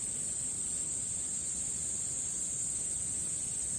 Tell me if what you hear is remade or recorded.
recorded